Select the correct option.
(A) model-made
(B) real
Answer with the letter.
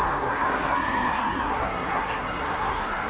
A